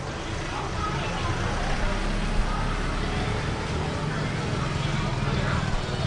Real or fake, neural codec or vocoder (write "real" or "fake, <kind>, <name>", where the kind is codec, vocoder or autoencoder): real